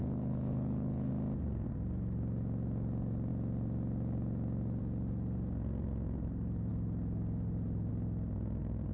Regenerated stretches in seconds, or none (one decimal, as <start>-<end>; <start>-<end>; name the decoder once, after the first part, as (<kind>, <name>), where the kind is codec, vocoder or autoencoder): 0.0-1.1 (codec, HILCodec)